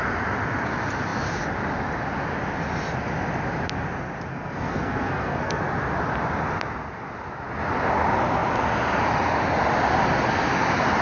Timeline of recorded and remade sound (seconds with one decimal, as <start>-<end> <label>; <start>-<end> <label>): 0.0-4.3 recorded; 4.3-5.6 remade; 5.6-11.0 recorded